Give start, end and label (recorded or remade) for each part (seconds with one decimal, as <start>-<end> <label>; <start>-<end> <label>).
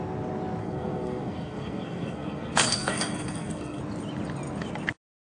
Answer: 0.0-0.6 recorded; 0.6-3.8 remade; 3.8-5.3 recorded